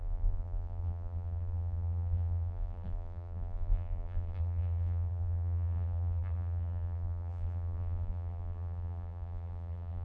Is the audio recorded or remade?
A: remade